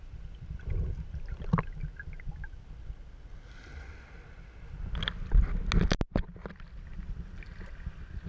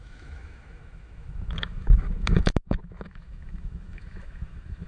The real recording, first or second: first